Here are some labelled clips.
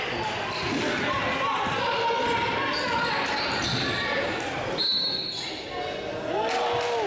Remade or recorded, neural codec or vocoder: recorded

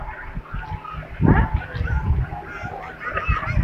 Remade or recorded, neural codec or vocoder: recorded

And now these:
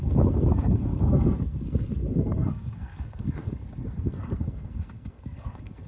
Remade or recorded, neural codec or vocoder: remade, codec, SNAC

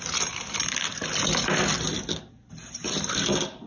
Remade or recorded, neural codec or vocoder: recorded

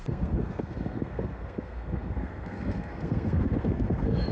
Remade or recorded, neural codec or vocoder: remade, codec, SNAC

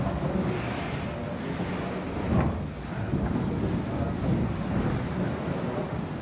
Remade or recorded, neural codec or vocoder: recorded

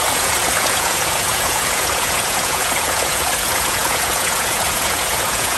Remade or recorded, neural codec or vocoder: remade, vocoder, Vocos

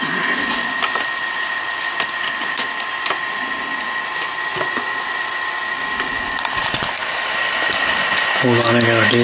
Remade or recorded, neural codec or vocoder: recorded